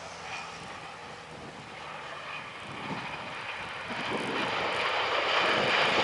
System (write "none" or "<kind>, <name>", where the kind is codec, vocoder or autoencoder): none